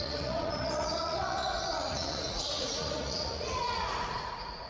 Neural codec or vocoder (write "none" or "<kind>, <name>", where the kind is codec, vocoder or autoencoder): vocoder, Vocos